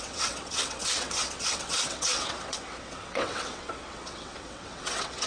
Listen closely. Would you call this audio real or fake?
fake